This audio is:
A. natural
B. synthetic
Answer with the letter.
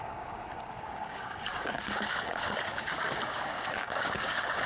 B